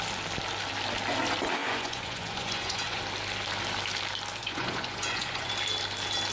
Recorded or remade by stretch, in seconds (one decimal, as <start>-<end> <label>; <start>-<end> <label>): 0.0-1.6 recorded; 1.6-3.0 remade; 3.0-4.4 recorded; 4.4-5.5 remade; 5.5-6.3 recorded